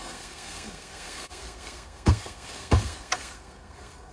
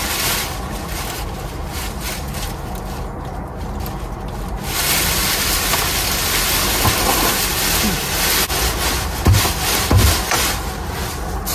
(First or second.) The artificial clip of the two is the first